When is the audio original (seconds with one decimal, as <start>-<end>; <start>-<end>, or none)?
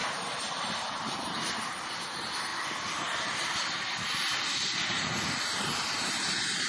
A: 2.5-5.6